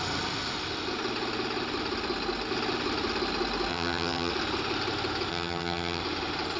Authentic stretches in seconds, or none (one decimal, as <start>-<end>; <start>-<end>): 0.0-3.7; 4.3-5.3; 6.0-6.6